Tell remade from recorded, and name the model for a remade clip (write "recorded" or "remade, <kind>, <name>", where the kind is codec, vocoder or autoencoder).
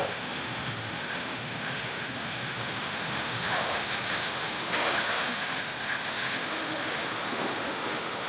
remade, autoencoder, DAC-VAE